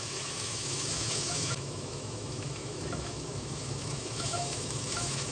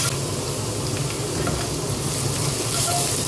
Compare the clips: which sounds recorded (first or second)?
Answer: second